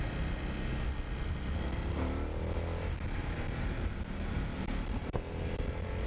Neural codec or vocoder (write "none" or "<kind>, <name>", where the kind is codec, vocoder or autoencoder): none